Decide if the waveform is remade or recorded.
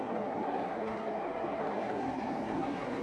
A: remade